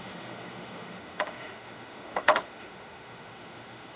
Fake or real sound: fake